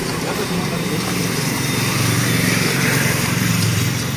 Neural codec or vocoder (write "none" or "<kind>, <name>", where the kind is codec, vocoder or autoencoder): vocoder, BigVGAN v2